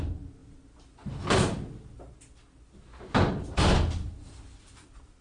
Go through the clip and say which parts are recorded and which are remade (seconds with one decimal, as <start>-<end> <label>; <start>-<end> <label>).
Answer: 0.0-5.2 recorded